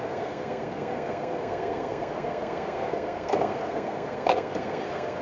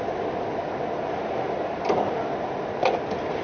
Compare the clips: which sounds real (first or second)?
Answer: second